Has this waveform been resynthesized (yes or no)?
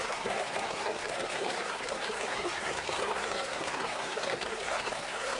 yes